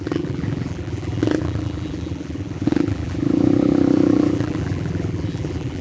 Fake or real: fake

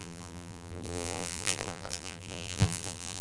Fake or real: fake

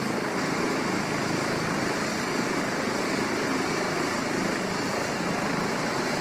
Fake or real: fake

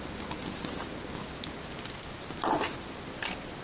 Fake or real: real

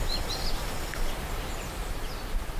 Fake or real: fake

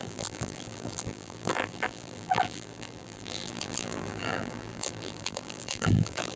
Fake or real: fake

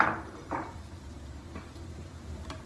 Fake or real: fake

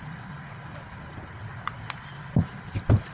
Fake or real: real